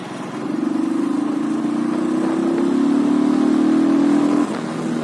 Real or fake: real